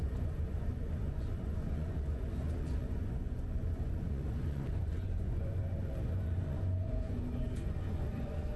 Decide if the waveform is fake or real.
fake